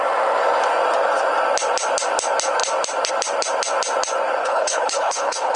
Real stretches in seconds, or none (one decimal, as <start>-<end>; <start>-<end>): 0.0-4.4